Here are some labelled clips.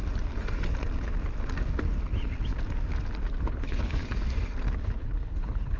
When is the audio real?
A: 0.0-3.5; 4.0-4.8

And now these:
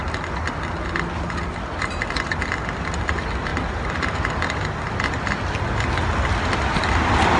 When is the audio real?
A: 0.0-7.4

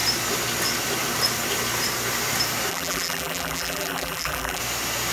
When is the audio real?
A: 0.0-2.7; 4.6-5.1

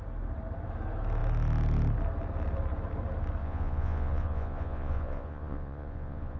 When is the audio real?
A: 0.0-3.4